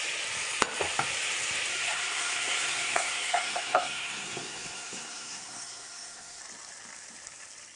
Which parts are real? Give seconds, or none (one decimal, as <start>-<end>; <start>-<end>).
0.0-1.7; 6.4-7.8